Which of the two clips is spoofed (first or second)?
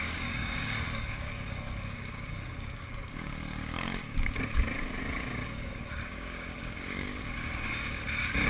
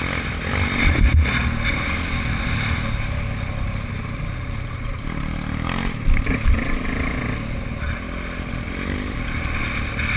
first